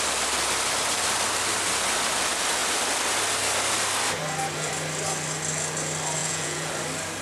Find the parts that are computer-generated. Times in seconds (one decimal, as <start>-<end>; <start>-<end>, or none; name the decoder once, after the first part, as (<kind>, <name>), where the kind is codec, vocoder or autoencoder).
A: 6.2-6.7 (vocoder, Vocos)